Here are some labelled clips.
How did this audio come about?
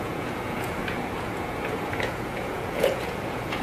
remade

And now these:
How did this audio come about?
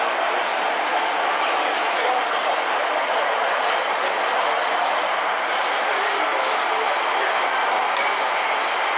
recorded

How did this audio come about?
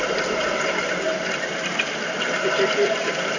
recorded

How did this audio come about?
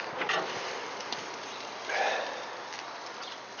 recorded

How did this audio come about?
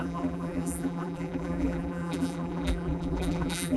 remade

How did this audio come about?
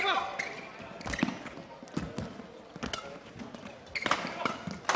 recorded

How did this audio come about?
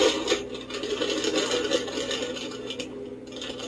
recorded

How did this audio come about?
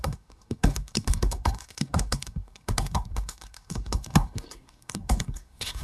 remade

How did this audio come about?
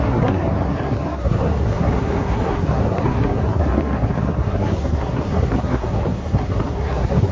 remade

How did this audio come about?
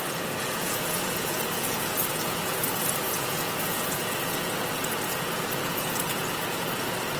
remade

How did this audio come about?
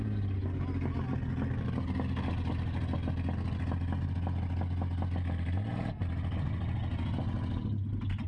recorded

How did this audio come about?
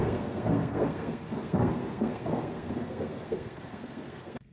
remade